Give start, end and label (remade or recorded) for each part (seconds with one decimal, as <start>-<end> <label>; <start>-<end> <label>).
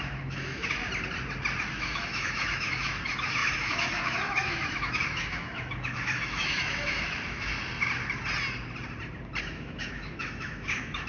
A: 0.0-0.8 remade; 0.8-1.6 recorded; 1.6-7.5 remade; 7.5-9.4 recorded; 9.4-11.1 remade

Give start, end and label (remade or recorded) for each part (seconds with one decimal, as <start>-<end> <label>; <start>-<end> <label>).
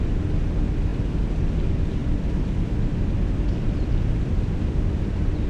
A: 0.0-5.5 recorded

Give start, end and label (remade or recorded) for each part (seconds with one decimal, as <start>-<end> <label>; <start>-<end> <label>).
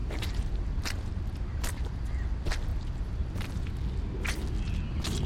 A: 0.0-0.7 remade; 0.7-2.7 recorded; 2.7-3.3 remade; 3.3-5.3 recorded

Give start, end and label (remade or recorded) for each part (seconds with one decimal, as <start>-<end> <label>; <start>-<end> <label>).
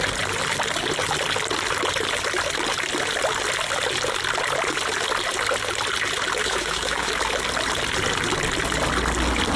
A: 0.0-6.4 recorded; 6.4-7.1 remade; 7.1-9.6 recorded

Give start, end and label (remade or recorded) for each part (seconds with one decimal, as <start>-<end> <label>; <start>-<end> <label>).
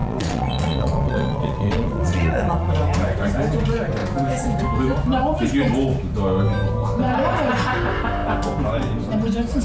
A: 0.0-2.7 remade; 2.7-9.6 recorded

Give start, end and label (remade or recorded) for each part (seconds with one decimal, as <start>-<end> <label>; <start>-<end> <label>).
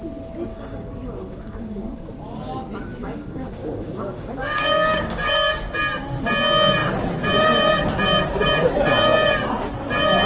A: 0.0-0.5 recorded; 0.5-2.1 remade; 2.1-3.0 recorded; 3.0-5.6 remade; 5.6-10.3 recorded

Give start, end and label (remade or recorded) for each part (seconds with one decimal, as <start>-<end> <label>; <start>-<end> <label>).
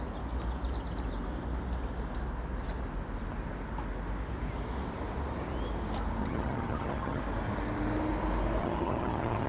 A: 0.0-6.2 recorded; 6.2-7.2 remade; 7.2-8.6 recorded; 8.6-9.5 remade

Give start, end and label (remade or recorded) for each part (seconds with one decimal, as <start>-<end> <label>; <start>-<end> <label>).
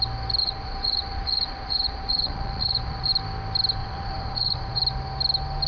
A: 0.0-0.4 recorded; 0.4-3.1 remade; 3.1-3.8 recorded; 3.8-4.8 remade; 4.8-5.7 recorded